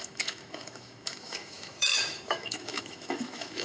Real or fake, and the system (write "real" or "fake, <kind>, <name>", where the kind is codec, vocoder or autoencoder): fake, autoencoder, DAC-VAE